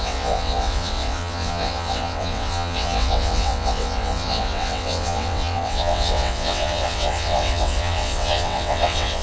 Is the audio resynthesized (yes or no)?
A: yes